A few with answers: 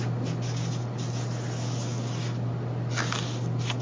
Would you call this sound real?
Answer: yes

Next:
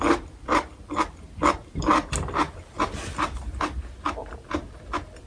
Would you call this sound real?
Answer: yes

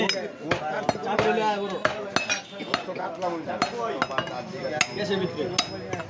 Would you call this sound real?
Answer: yes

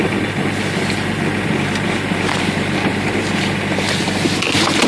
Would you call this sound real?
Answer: yes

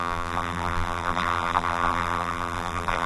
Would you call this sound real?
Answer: no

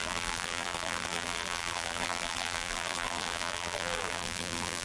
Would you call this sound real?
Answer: no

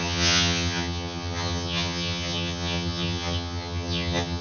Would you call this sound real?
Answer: no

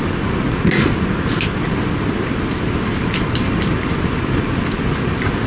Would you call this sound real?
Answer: yes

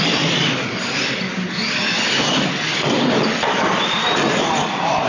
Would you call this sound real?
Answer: yes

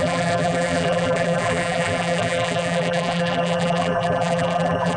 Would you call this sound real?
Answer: no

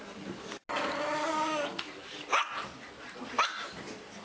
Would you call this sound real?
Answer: yes